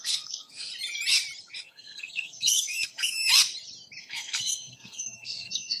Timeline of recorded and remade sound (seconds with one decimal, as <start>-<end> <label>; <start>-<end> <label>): 0.0-0.7 remade; 0.7-1.6 recorded; 1.6-3.3 remade; 3.3-4.0 recorded; 4.0-5.8 remade